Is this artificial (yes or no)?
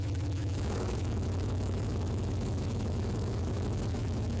yes